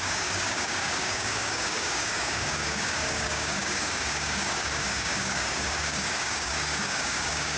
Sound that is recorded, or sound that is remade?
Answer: remade